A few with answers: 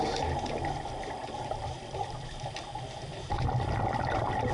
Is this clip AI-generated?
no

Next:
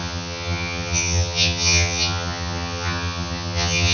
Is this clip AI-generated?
yes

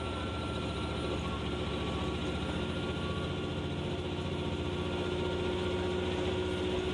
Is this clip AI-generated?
no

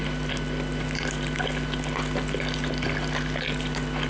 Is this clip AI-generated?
no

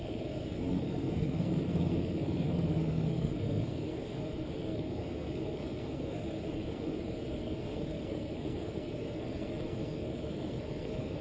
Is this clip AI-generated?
yes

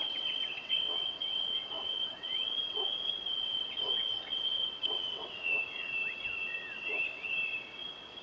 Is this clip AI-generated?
yes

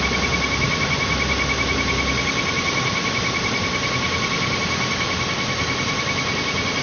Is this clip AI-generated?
no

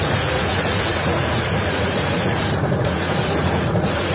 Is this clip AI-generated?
yes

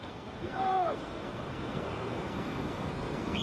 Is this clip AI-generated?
yes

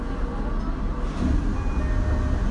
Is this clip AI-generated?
no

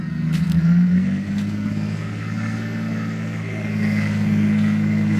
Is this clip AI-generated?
yes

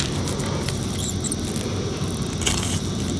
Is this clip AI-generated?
no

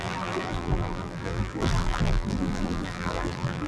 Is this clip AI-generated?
yes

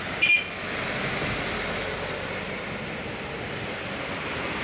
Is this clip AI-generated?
no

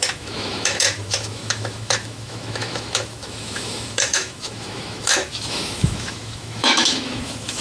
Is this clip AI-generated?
yes